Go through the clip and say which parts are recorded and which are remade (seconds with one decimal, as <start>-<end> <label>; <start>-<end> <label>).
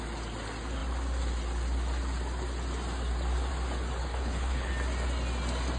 0.0-4.0 recorded; 4.0-4.7 remade; 4.7-5.8 recorded